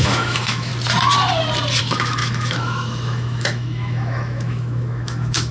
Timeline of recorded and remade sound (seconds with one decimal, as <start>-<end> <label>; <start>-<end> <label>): 0.0-0.7 remade; 0.7-1.8 recorded; 1.8-5.5 remade